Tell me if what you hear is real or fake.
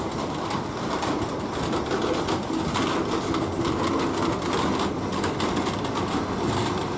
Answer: real